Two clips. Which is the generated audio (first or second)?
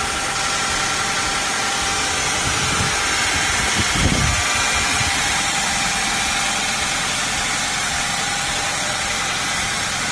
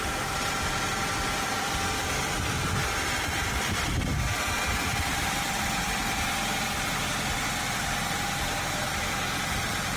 second